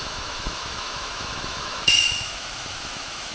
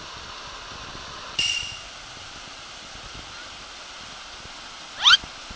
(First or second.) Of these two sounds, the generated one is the first